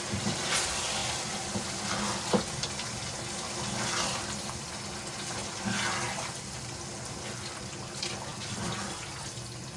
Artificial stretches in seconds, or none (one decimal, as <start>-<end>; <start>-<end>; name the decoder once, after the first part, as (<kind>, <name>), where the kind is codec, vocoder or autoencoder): 5.4-6.8 (vocoder, BigVGAN v2); 8.3-8.8